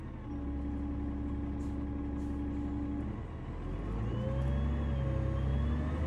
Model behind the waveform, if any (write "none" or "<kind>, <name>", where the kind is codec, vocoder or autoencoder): none